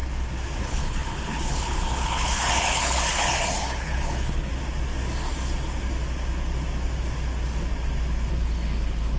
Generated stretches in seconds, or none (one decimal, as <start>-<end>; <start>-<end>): 0.6-4.5; 8.3-9.2